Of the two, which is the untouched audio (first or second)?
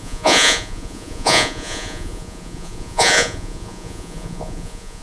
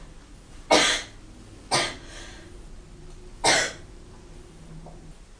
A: second